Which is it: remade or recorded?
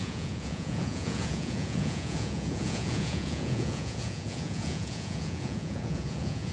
remade